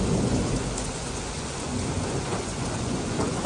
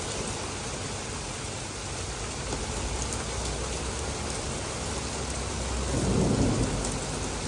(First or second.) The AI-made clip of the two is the first